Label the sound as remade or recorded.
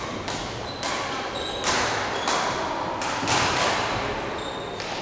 recorded